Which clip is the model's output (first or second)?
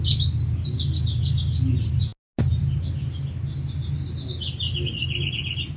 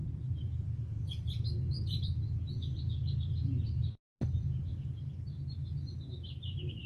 second